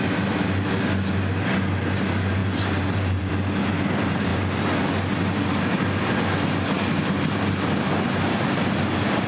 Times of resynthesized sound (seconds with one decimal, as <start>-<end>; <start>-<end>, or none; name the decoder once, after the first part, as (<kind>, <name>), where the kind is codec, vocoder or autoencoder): 2.4-3.3 (vocoder, BigVGAN v2)